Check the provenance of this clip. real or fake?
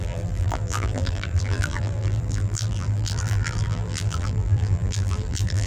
fake